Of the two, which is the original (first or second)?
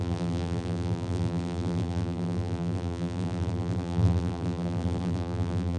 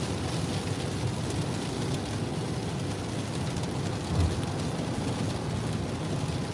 second